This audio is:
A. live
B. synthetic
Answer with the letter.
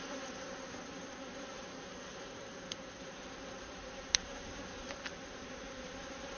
B